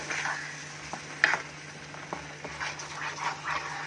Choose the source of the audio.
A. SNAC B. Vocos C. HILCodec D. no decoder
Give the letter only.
D